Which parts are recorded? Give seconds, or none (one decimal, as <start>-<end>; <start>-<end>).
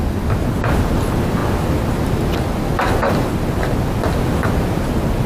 0.0-5.3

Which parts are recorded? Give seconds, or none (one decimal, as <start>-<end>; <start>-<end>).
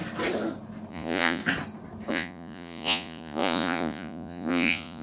0.0-0.9; 1.4-2.1